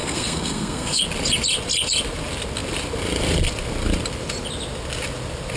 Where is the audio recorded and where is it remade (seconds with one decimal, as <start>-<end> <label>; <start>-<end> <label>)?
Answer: 0.0-1.0 remade; 1.0-5.6 recorded